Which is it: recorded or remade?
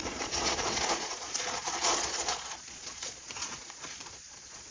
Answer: remade